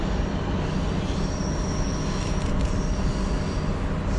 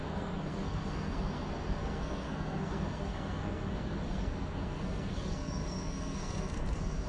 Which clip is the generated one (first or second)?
second